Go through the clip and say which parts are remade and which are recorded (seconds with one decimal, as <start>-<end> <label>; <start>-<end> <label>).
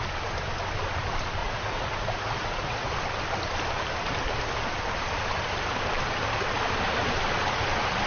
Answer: 0.0-1.4 recorded; 1.4-2.9 remade; 2.9-8.1 recorded